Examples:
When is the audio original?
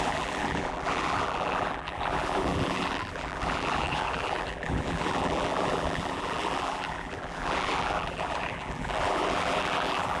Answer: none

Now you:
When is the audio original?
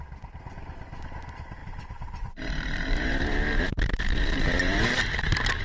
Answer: 0.0-1.6; 5.0-5.6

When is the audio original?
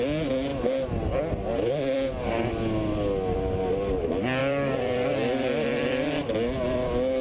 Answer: 0.0-4.4; 6.2-7.2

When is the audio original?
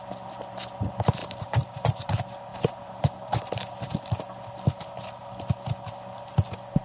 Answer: 0.0-1.2; 2.1-2.5; 3.5-6.8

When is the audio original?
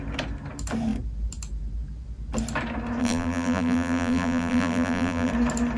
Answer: 0.0-3.0; 5.3-5.8